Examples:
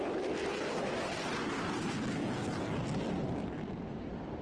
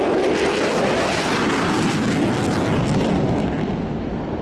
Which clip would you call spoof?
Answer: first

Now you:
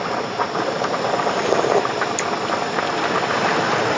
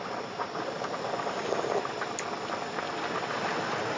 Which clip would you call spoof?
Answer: first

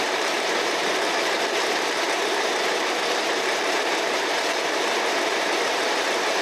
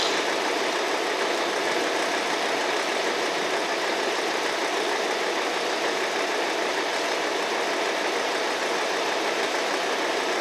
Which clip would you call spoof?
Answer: first